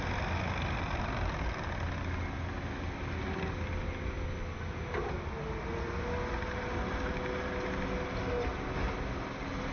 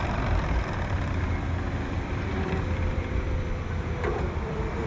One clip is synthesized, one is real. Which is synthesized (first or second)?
second